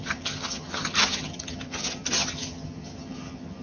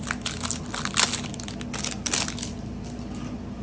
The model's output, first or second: first